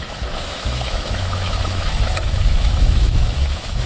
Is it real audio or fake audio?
fake